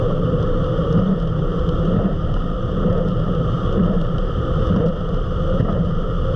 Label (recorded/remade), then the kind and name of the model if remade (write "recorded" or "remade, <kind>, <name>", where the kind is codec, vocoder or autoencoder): remade, vocoder, BigVGAN v2